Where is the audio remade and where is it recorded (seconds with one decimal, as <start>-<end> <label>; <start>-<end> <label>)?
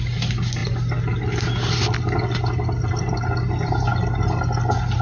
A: 0.0-5.0 recorded